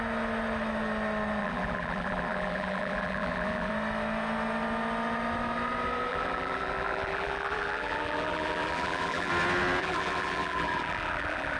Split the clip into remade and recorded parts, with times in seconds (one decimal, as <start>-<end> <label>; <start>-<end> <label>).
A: 0.0-1.4 recorded; 1.4-3.7 remade; 3.7-6.1 recorded; 6.1-9.3 remade; 9.3-9.8 recorded; 9.8-11.6 remade